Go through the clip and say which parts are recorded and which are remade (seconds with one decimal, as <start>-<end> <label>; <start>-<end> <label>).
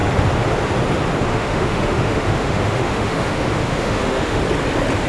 0.0-1.3 recorded; 1.3-4.4 remade; 4.4-5.1 recorded